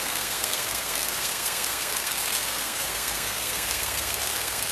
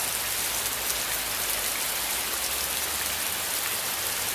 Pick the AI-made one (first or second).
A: first